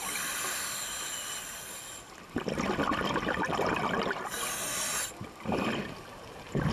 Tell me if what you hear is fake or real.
real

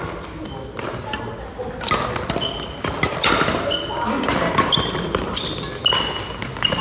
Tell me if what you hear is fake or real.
real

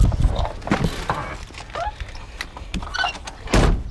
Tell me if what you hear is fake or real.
real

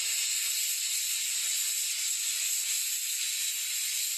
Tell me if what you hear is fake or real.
real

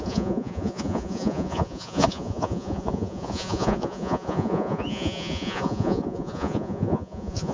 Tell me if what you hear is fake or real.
fake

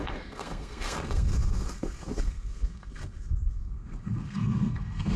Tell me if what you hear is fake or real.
fake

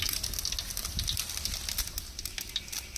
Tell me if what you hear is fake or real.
real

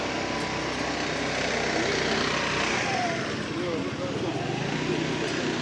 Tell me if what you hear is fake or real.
real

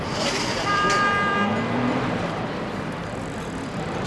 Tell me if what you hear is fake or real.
fake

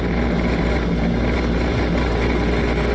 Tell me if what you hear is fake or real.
real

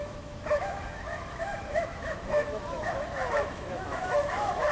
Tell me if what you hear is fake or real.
fake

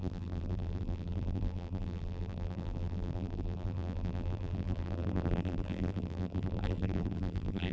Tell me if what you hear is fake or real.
fake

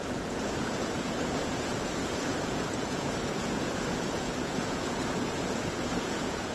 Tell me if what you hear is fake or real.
fake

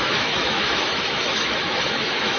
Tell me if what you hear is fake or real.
fake